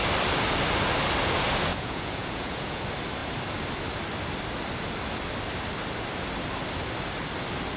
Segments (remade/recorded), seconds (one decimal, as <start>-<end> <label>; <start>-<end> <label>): 0.0-1.7 recorded; 1.7-2.8 remade; 2.8-7.8 recorded